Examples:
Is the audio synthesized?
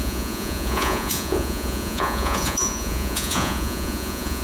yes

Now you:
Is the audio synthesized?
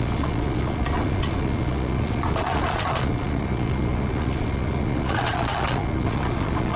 yes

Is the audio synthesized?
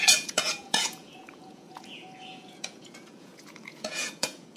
yes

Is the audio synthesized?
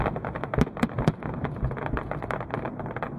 no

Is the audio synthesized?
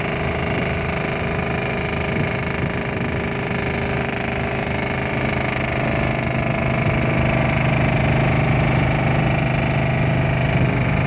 no